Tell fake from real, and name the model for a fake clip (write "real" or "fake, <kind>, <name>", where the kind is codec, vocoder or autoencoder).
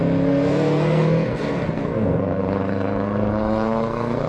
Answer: fake, codec, SNAC